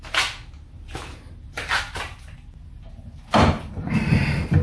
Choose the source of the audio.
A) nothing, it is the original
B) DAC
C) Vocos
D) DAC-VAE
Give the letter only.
A